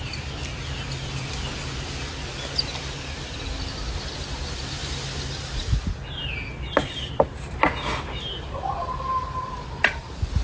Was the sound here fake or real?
real